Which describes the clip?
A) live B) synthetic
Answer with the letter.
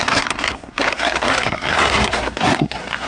B